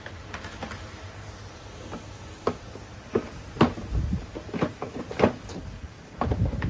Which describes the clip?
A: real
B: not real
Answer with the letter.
A